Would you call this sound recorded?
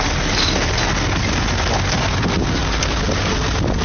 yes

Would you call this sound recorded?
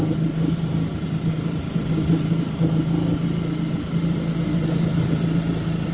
yes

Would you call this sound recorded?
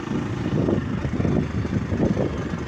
yes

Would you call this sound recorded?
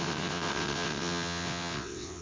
no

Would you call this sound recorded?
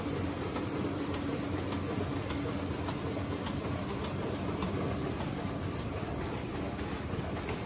yes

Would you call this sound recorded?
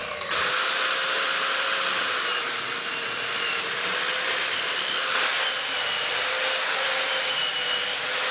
no